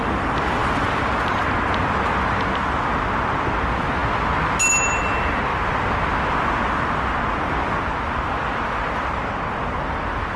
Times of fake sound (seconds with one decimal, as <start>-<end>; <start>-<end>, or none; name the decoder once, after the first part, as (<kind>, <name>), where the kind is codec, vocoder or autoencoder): none